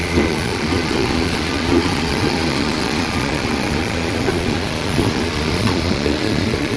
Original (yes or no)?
no